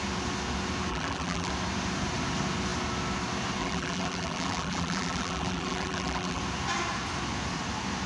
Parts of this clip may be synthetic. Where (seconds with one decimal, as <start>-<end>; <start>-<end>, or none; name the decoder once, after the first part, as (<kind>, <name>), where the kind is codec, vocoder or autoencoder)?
0.9-1.5 (vocoder, BigVGAN v2); 3.6-6.4